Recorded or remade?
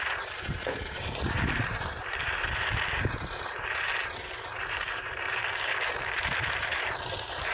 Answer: remade